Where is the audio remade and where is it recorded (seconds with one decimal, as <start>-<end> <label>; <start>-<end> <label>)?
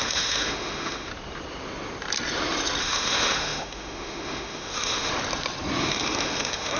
0.0-1.1 remade; 1.1-2.8 recorded; 2.8-5.1 remade; 5.1-5.8 recorded; 5.8-6.8 remade